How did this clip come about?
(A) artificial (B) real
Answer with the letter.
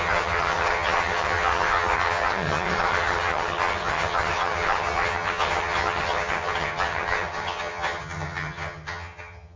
A